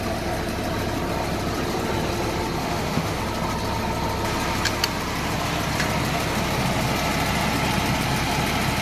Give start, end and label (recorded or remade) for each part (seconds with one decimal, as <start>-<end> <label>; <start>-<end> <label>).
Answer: 0.0-2.6 recorded; 2.6-3.2 remade; 3.2-8.8 recorded